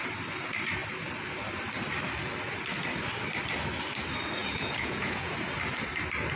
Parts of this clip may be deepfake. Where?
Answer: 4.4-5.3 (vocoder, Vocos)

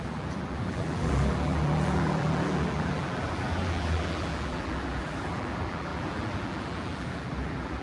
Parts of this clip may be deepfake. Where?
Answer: 0.0-7.8 (vocoder, BigVGAN v2)

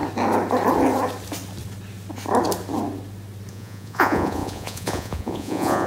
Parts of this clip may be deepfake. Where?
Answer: 3.5-5.9 (vocoder, Vocos)